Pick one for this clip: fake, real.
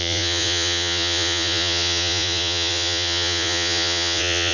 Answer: fake